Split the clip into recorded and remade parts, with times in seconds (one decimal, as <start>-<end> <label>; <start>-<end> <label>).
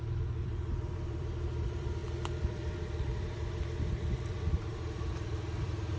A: 0.0-6.0 remade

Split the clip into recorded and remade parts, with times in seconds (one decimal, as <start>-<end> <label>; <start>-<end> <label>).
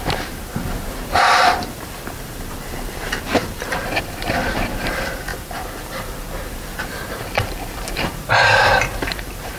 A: 0.0-9.6 remade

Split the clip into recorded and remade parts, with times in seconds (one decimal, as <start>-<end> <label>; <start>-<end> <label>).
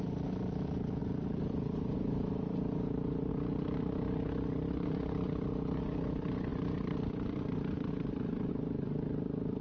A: 0.0-1.0 recorded; 1.0-3.3 remade; 3.3-6.5 recorded; 6.5-8.5 remade; 8.5-9.6 recorded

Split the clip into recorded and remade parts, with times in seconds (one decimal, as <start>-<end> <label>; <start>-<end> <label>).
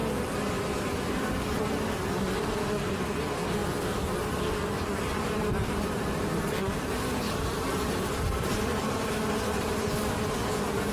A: 0.0-5.1 recorded; 5.1-9.2 remade; 9.2-10.9 recorded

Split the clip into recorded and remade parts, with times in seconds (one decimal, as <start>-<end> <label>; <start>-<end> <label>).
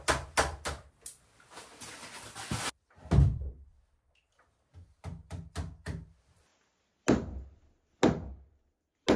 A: 0.0-9.2 recorded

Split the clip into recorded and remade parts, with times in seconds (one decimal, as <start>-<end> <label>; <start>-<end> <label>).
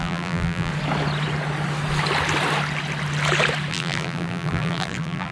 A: 0.0-0.7 remade; 0.7-3.7 recorded; 3.7-5.3 remade